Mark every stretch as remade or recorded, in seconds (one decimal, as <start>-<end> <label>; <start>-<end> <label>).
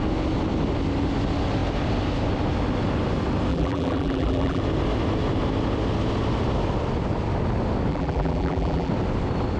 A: 0.0-3.5 recorded; 3.5-4.6 remade; 4.6-7.9 recorded; 7.9-8.9 remade; 8.9-9.6 recorded